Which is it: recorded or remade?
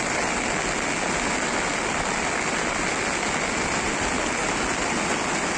recorded